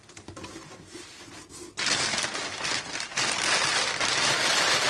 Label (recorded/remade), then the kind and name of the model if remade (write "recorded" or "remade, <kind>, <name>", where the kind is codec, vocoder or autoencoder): recorded